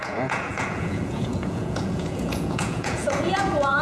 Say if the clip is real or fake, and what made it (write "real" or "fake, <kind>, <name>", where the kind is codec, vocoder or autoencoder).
fake, vocoder, Vocos